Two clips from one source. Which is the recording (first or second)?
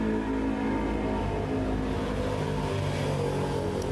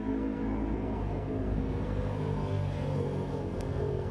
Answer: first